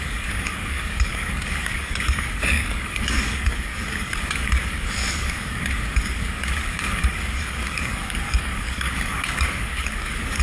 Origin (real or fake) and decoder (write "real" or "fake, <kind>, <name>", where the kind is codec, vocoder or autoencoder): fake, codec, DAC